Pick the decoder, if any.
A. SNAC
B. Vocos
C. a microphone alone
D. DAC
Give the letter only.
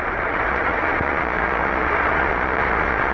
B